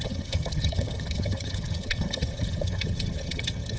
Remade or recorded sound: remade